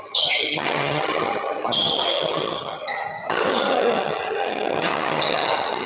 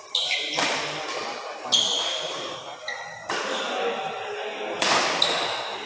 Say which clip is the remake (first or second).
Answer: first